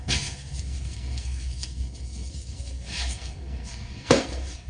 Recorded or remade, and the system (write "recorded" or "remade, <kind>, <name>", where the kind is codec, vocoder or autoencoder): remade, codec, SNAC